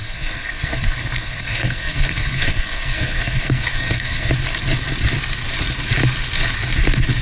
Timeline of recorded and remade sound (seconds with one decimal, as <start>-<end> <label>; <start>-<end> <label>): 0.0-4.3 remade; 4.3-7.2 recorded